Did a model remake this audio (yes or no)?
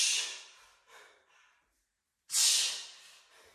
no